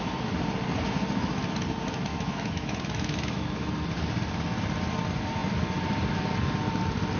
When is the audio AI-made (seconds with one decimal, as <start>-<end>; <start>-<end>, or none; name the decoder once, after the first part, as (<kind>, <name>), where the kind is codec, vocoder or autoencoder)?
2.1-3.7 (autoencoder, DAC-VAE)